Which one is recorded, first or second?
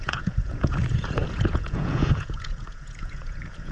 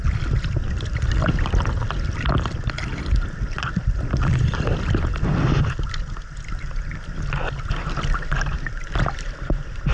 second